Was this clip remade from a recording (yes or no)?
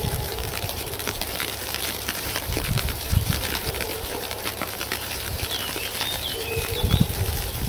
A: yes